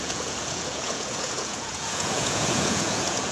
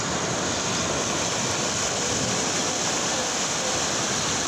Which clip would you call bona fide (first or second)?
second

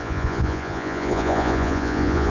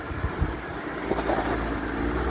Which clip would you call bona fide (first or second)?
second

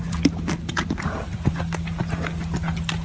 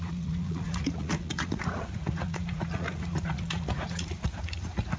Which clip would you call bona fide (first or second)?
first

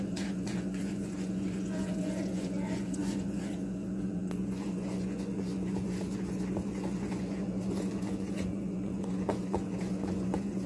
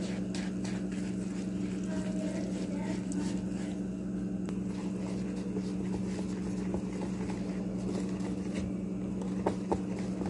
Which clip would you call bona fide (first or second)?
second